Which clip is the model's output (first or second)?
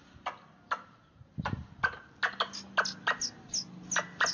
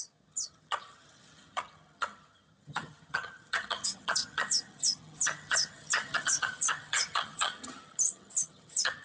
second